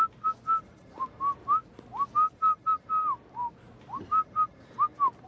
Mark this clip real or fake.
real